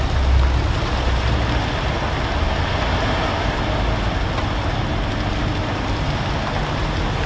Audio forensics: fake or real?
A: real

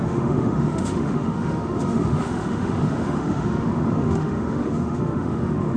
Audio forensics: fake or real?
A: fake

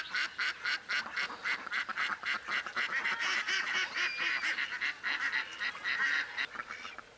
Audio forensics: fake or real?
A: real